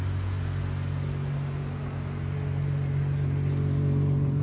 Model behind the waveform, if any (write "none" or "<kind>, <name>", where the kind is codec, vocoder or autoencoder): none